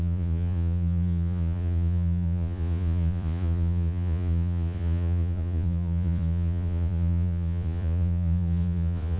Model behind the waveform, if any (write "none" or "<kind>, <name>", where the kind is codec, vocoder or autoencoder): vocoder, Vocos